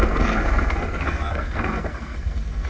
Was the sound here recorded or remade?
remade